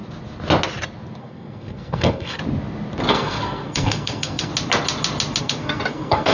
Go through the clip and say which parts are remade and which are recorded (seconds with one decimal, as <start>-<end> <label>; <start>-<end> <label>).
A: 0.0-1.2 recorded; 1.2-2.4 remade; 2.4-3.1 recorded; 3.1-4.5 remade; 4.5-5.4 recorded; 5.4-6.3 remade